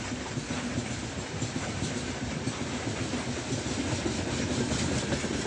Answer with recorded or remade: recorded